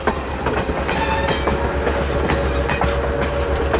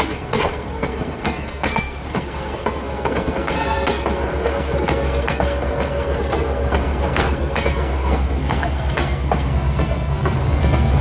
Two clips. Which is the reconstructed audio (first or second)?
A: second